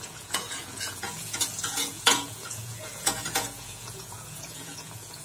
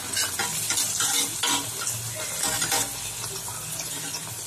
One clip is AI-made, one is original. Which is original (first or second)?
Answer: second